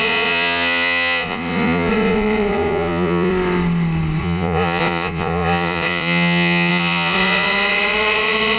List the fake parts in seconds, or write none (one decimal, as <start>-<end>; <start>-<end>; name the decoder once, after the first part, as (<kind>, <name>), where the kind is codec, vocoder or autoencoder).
0.0-3.3 (vocoder, Vocos); 4.2-8.6